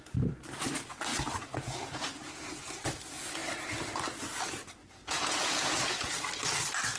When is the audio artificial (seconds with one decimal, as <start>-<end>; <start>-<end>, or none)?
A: 1.1-2.5; 4.8-5.9